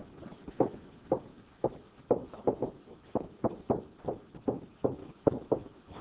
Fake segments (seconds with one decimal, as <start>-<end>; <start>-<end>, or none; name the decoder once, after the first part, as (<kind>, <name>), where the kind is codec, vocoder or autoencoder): 1.3-3.6 (autoencoder, DAC-VAE); 5.0-6.0